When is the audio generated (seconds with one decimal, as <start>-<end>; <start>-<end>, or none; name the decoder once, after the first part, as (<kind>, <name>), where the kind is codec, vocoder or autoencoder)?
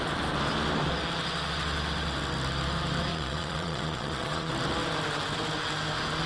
3.1-4.5 (vocoder, Vocos)